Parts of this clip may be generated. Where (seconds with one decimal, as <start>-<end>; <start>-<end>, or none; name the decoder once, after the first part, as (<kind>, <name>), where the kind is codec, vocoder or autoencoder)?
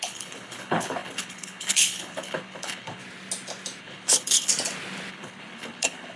0.0-3.0 (codec, HILCodec); 3.8-4.5; 5.1-6.2